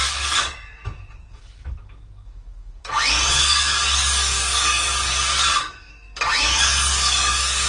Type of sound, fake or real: fake